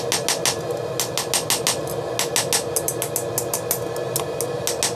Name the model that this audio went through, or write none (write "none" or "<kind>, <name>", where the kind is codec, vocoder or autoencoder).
none